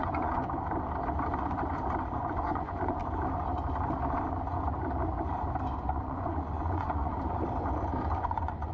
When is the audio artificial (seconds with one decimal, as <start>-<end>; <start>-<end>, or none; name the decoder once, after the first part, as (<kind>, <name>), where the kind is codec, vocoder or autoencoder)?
0.0-0.4 (vocoder, Vocos); 2.3-3.0; 5.9-7.1; 8.2-8.7